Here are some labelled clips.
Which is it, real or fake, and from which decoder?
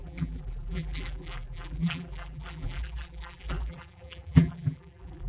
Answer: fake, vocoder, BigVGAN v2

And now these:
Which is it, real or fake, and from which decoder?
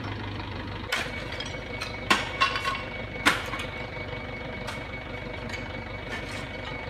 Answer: fake, vocoder, BigVGAN v2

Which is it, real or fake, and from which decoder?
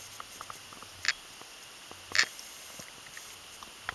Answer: real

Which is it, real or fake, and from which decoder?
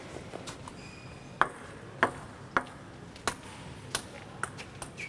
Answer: real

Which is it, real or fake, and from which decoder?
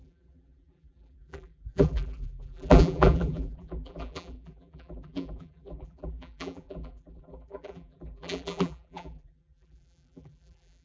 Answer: fake, vocoder, BigVGAN v2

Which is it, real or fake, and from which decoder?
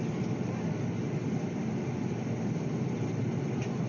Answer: real